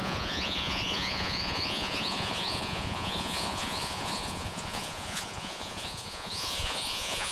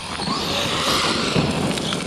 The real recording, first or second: second